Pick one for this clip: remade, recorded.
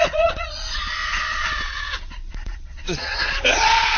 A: remade